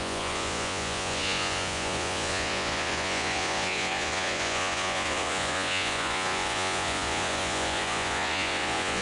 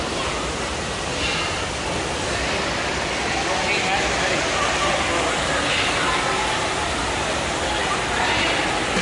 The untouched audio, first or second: second